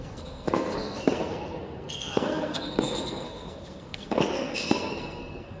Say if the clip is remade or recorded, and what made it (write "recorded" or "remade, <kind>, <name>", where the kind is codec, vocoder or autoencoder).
remade, codec, SNAC